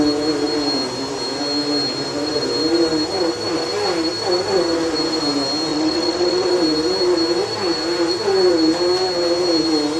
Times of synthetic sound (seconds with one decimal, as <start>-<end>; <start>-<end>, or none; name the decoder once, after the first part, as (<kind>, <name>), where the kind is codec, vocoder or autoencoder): 5.7-6.5 (vocoder, WaveNeXt)